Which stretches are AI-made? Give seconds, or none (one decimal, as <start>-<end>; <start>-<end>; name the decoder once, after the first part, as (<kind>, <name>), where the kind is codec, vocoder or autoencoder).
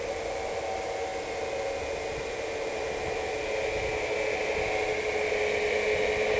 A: none